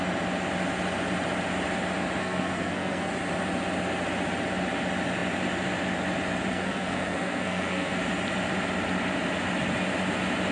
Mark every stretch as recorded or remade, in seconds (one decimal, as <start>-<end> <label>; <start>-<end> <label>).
0.0-2.2 recorded; 2.2-3.1 remade; 3.1-6.5 recorded; 6.5-8.0 remade; 8.0-10.5 recorded